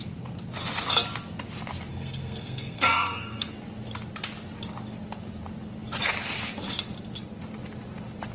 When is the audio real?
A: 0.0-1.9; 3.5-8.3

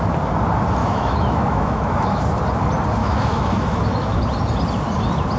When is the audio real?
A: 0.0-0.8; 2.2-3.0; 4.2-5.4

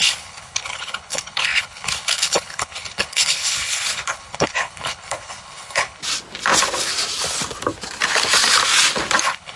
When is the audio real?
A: 6.0-9.2

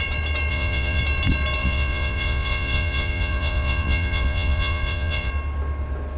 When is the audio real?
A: 0.0-0.5; 1.0-1.6; 5.3-6.2

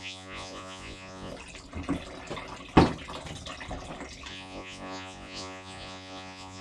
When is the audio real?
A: 1.3-4.3

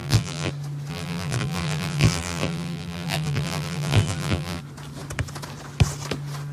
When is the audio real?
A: 0.5-0.9; 4.6-6.5